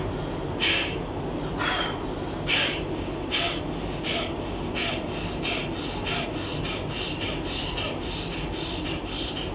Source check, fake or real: real